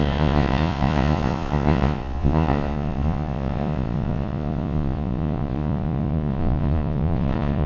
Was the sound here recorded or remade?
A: remade